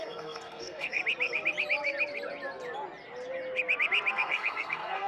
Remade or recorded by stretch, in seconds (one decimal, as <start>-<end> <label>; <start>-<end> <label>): 0.0-1.0 remade; 1.0-4.1 recorded; 4.1-5.1 remade